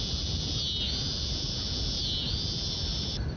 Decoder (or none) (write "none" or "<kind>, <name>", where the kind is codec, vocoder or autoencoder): none